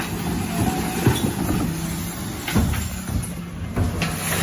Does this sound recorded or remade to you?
recorded